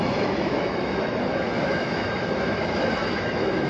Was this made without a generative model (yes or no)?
no